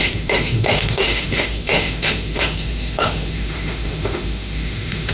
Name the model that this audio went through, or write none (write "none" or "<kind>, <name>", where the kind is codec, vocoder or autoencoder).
autoencoder, DAC-VAE